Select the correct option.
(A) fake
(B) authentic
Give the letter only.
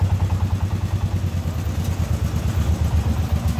B